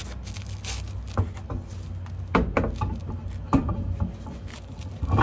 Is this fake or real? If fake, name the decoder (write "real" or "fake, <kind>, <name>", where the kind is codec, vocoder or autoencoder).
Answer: real